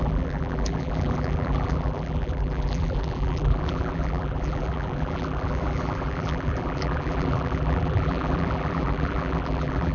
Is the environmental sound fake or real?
fake